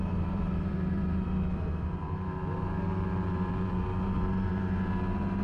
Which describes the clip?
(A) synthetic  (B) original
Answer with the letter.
A